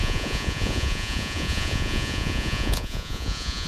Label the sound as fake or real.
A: fake